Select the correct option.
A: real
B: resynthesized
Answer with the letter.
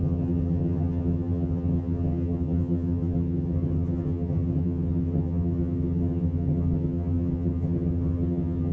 B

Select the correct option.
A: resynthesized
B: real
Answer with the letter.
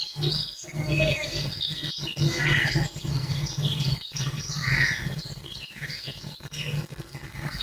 A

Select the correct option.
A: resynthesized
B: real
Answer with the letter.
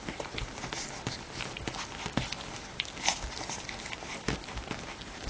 B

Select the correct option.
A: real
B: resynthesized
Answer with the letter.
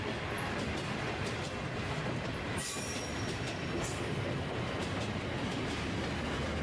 A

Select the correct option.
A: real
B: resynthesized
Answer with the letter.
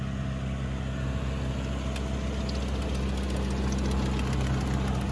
A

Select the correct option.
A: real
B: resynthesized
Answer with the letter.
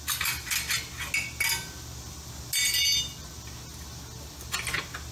A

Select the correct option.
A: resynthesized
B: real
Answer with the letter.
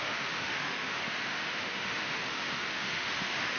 A